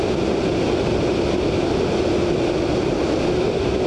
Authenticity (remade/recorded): recorded